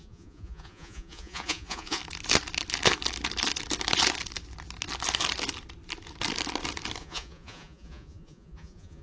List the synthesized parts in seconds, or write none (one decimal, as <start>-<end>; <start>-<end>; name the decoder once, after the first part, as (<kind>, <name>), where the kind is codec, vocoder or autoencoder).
0.0-2.0 (vocoder, Vocos); 7.0-9.0